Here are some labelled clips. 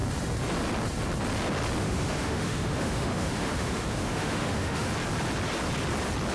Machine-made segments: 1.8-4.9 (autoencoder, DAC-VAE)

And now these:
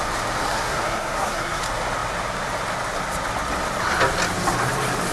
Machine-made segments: 0.5-1.6 (codec, SNAC)

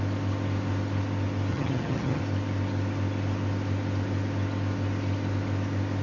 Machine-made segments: 1.5-2.2 (vocoder, HiFi-GAN)

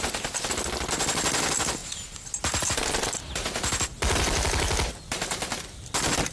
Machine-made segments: none

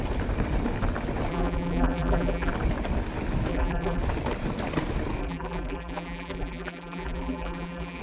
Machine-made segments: 1.3-2.5 (vocoder, BigVGAN v2); 3.5-4.0; 5.2-8.0

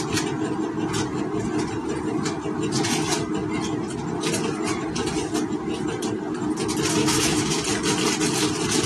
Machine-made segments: 7.0-7.6 (autoencoder, DAC-VAE)

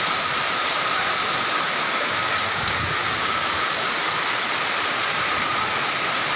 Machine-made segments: 1.8-4.0 (codec, DAC)